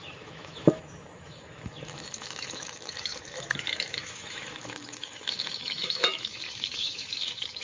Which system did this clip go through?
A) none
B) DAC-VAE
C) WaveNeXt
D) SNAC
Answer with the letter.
B